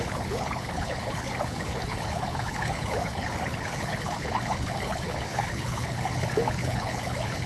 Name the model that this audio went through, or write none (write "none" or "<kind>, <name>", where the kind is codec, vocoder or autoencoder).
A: codec, HILCodec